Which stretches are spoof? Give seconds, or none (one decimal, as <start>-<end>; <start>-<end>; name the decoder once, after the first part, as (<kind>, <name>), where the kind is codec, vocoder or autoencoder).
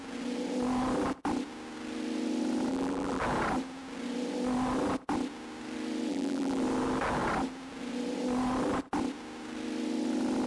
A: 2.7-3.2 (vocoder, BigVGAN v2); 6.1-6.6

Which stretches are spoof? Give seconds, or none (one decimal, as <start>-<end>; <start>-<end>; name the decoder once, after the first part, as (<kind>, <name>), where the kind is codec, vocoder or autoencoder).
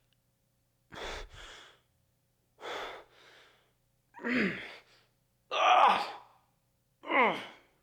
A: none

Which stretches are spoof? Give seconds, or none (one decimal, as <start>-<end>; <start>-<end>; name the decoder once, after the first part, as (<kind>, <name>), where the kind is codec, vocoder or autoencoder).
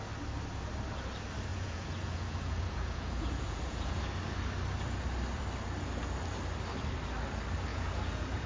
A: 1.5-4.0 (vocoder, Vocos); 7.7-8.5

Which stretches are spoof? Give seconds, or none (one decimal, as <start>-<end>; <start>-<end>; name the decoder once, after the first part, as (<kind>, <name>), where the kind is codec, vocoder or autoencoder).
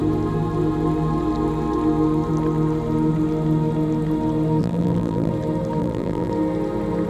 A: 4.6-5.3 (vocoder, BigVGAN v2); 5.8-6.3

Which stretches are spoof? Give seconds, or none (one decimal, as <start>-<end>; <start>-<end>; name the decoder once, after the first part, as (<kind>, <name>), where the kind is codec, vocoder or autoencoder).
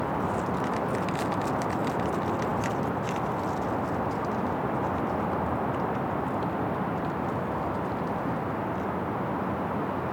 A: none